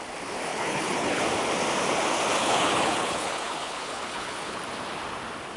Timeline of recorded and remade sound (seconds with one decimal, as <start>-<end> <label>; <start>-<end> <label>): 0.0-0.5 recorded; 0.5-1.2 remade; 1.2-2.4 recorded; 2.4-4.6 remade; 4.6-5.6 recorded